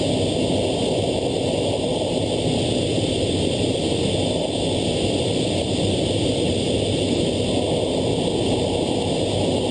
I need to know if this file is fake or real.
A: real